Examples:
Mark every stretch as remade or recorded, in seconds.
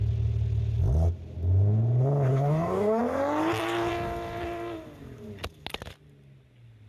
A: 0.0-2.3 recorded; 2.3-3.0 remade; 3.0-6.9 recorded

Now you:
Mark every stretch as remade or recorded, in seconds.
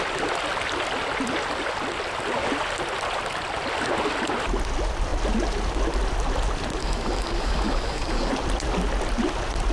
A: 0.0-6.8 recorded; 6.8-8.3 remade; 8.3-9.7 recorded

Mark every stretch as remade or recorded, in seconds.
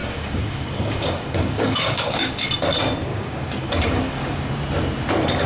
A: 0.0-2.3 remade; 2.3-3.1 recorded; 3.1-4.5 remade; 4.5-5.5 recorded